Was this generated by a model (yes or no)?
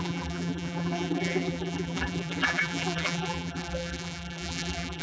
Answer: yes